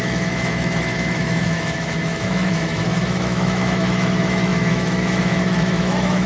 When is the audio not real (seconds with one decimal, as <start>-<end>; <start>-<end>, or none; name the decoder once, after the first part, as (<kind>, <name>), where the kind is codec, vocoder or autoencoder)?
0.0-6.3 (autoencoder, DAC-VAE)